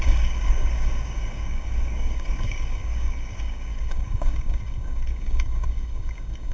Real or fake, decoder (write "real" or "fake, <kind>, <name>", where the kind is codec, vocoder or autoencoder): fake, codec, DAC